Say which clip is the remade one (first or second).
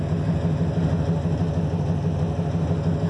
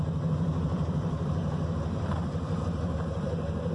second